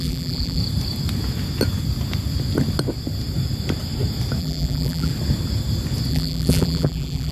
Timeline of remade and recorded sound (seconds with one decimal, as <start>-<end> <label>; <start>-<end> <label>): 0.0-0.6 remade; 0.6-4.4 recorded; 4.4-5.1 remade; 5.1-6.1 recorded; 6.1-7.3 remade